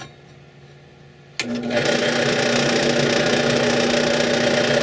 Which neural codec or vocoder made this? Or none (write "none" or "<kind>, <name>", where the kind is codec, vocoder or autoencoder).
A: none